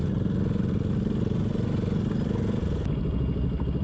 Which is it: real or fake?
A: real